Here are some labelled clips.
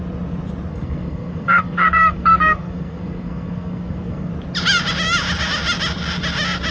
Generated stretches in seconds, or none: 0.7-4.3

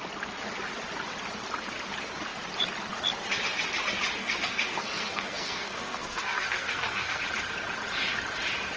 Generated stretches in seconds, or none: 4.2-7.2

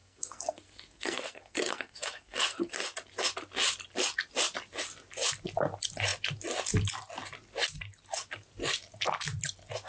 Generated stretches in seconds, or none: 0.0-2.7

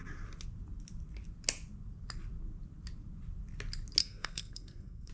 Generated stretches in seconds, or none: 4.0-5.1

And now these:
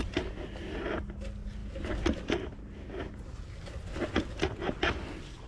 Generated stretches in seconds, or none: none

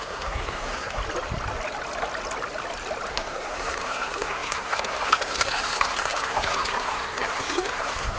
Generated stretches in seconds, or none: 0.0-1.0; 3.1-8.2

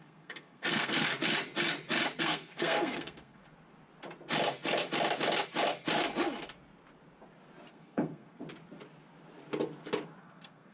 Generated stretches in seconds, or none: 0.0-1.1; 2.2-3.4; 7.7-8.4; 10.2-10.7